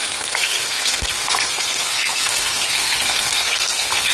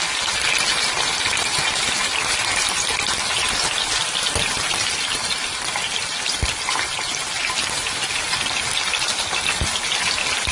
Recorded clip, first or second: second